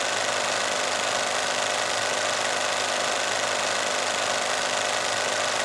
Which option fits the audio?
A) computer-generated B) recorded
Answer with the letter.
B